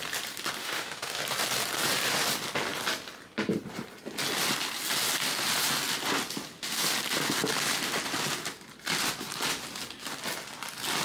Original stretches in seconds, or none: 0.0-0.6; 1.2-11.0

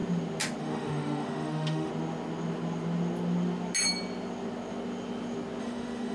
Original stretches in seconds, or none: 0.0-0.6; 1.9-5.6